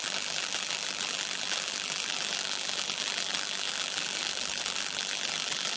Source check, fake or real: fake